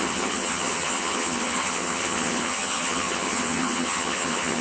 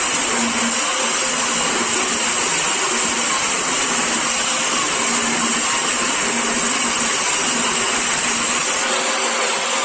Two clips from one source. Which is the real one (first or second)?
second